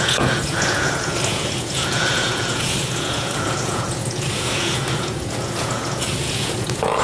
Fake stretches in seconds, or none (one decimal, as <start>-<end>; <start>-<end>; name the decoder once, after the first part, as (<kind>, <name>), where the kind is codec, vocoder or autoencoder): 0.0-7.0 (vocoder, Vocos)